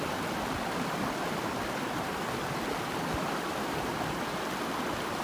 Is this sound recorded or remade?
recorded